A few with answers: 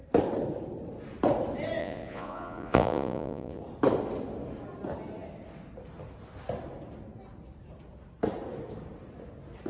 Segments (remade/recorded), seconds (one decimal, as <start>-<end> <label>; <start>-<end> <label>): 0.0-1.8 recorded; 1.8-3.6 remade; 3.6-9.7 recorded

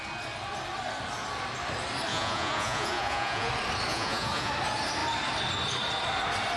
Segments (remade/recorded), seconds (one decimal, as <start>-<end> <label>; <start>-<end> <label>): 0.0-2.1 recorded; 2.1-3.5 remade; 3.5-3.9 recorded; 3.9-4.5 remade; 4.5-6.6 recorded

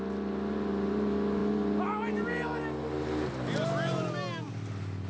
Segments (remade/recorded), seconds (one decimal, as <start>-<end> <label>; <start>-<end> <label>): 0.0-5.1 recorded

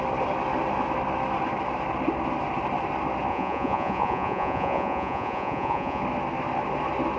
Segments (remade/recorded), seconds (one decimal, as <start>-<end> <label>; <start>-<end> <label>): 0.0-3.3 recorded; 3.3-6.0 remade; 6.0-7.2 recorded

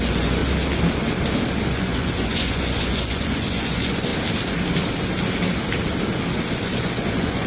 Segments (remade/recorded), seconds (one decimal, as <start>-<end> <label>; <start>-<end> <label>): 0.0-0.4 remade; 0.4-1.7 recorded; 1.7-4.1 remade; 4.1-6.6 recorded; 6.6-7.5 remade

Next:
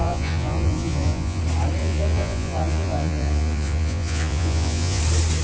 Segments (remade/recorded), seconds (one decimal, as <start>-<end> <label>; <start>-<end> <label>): 0.0-1.4 remade; 1.4-1.8 recorded; 1.8-5.0 remade; 5.0-5.4 recorded